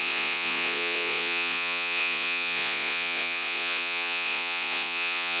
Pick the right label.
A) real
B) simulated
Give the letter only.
B